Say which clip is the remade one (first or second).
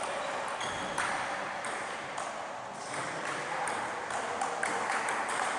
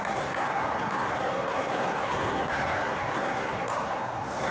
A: second